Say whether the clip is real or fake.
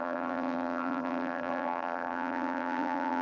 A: fake